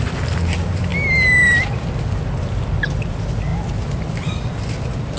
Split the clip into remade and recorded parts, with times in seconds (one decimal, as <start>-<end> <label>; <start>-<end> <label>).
0.0-5.2 recorded